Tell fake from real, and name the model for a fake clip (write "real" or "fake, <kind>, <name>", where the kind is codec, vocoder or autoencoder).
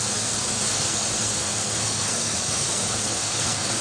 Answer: fake, codec, SNAC